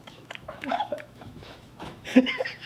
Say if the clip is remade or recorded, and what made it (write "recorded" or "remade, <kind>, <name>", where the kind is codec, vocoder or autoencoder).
remade, autoencoder, DAC-VAE